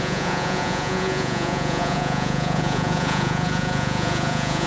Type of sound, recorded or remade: remade